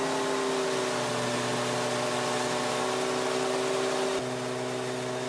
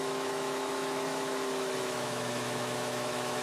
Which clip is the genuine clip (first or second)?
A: first